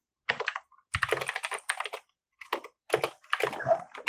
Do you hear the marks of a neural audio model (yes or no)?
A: no